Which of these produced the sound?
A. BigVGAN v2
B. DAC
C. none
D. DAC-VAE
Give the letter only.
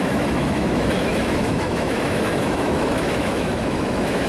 D